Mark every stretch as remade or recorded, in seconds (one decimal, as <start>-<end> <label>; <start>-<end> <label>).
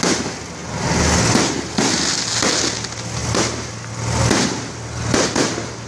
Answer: 0.0-3.2 recorded; 3.2-3.9 remade; 3.9-5.9 recorded